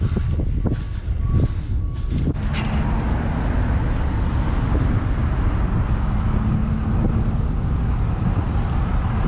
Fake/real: real